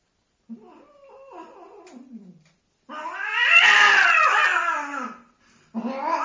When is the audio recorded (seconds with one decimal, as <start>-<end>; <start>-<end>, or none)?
0.0-6.2